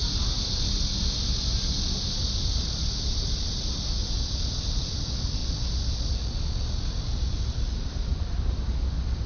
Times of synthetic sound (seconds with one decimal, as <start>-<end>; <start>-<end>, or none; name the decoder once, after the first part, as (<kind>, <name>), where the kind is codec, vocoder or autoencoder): 4.6-5.4 (vocoder, BigVGAN v2); 6.6-9.3